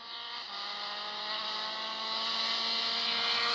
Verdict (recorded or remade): recorded